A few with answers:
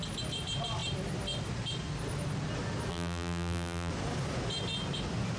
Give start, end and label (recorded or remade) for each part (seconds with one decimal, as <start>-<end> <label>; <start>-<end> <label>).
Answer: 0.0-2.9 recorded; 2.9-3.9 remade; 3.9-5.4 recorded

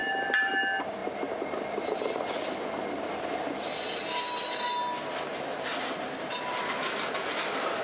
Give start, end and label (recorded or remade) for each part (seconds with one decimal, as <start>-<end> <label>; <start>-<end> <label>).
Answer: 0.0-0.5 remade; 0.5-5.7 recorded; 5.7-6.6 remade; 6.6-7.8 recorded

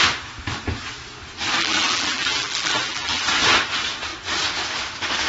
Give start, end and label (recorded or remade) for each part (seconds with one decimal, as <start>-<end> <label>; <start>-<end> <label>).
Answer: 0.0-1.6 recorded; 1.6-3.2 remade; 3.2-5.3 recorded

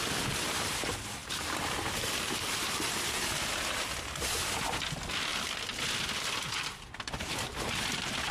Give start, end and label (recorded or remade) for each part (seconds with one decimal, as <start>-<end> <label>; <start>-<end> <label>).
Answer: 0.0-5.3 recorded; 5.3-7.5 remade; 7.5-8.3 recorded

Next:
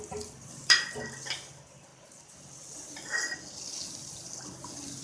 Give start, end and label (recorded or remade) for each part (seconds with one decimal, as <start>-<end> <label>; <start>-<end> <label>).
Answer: 0.0-1.9 remade; 1.9-5.0 recorded

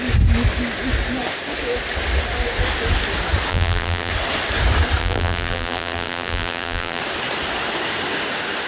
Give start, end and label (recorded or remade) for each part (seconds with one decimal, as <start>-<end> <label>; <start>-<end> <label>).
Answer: 0.0-3.5 recorded; 3.5-4.1 remade; 4.1-5.0 recorded; 5.0-7.0 remade; 7.0-8.7 recorded